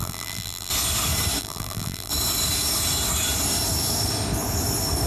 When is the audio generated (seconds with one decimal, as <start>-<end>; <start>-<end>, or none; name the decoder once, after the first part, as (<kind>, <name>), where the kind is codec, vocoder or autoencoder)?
0.0-0.7 (vocoder, BigVGAN v2); 1.4-2.1